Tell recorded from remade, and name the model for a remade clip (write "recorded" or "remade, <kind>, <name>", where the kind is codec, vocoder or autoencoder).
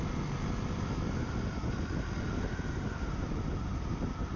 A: recorded